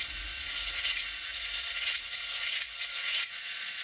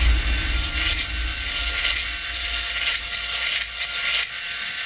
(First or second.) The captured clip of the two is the second